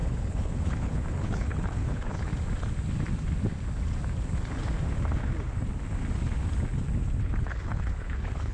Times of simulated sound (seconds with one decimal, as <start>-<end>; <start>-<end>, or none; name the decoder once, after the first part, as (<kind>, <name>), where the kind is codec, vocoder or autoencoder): 0.0-2.3 (codec, HILCodec); 7.2-8.5